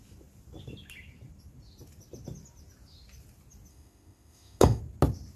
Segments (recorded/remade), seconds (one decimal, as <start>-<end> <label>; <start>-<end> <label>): 0.0-3.7 recorded; 3.7-4.8 remade; 4.8-5.4 recorded